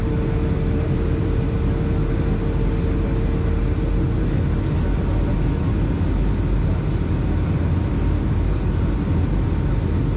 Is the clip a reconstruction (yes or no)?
no